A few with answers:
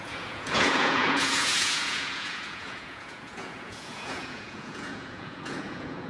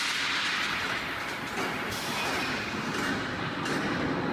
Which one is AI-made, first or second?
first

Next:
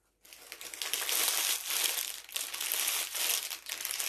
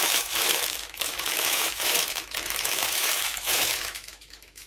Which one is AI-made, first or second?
second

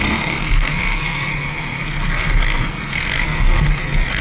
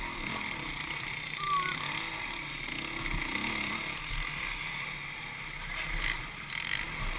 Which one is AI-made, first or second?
first